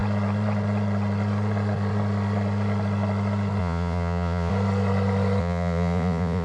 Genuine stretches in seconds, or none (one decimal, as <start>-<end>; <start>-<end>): 0.0-3.6; 4.5-5.4